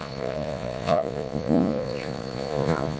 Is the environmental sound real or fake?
fake